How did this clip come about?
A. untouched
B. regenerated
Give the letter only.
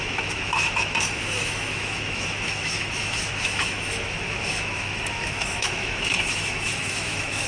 B